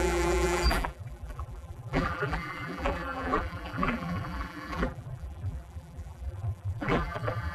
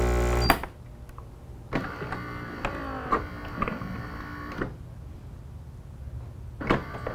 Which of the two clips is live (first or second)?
second